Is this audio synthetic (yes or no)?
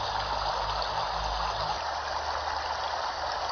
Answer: no